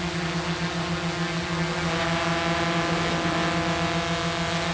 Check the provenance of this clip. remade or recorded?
recorded